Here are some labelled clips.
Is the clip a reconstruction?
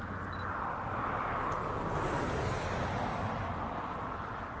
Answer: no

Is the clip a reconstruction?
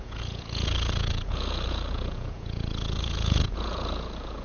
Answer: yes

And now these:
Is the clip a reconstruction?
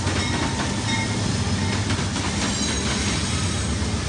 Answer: no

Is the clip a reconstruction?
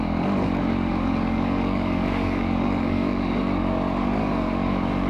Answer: yes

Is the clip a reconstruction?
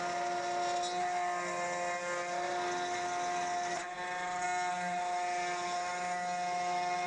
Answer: no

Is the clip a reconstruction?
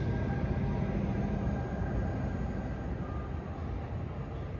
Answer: no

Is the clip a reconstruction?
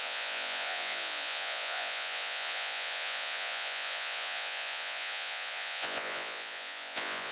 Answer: yes